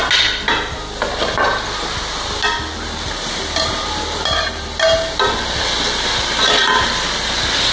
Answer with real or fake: real